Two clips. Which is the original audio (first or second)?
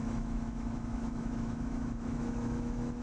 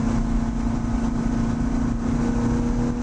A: second